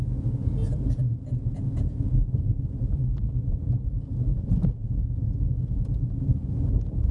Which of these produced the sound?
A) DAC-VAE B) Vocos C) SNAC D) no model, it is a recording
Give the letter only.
B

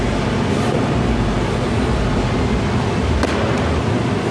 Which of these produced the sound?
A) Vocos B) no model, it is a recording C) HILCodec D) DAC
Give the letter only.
B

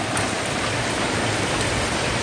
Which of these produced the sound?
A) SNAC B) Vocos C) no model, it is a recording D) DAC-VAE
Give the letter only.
C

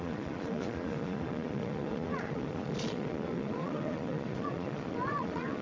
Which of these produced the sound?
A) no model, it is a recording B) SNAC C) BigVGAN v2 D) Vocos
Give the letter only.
D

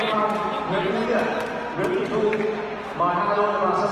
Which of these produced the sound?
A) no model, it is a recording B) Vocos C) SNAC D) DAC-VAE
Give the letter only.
A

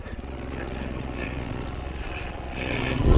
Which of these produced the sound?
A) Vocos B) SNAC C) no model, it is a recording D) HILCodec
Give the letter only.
A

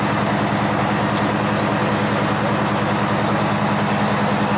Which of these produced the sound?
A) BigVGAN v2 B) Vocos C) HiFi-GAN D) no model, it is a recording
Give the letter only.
D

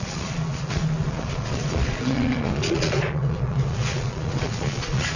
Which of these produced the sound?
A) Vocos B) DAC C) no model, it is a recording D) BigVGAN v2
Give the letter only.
A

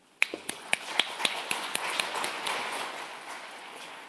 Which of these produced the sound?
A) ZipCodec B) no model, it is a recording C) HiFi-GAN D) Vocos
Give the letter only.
D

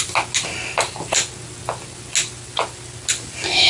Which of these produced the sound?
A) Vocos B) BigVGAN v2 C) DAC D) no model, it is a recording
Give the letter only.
D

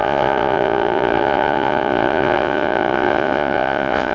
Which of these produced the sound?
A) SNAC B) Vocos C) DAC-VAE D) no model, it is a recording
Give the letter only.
B